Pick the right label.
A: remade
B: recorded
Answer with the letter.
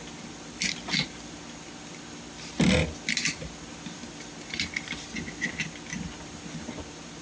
B